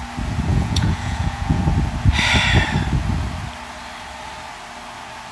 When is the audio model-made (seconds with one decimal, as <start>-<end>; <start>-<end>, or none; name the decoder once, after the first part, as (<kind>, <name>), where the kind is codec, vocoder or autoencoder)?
0.5-1.6 (vocoder, Vocos)